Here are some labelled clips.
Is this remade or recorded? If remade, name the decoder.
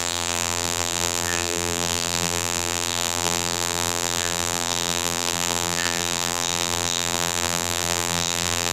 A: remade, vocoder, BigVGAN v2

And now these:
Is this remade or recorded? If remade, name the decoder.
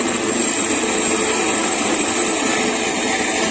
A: recorded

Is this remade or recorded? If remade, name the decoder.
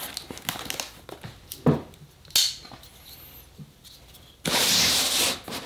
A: recorded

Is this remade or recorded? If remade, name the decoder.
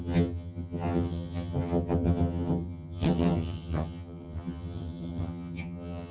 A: remade, vocoder, HiFi-GAN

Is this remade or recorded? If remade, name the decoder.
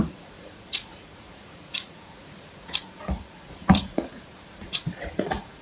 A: remade, vocoder, Vocos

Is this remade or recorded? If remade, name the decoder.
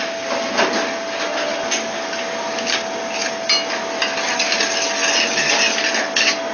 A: recorded